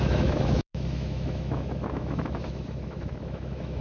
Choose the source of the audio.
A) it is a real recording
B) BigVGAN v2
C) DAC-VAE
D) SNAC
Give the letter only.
C